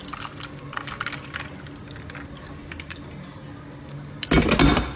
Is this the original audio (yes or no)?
yes